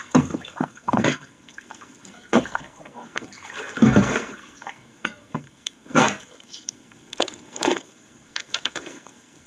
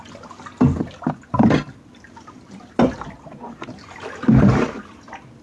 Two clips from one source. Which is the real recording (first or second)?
second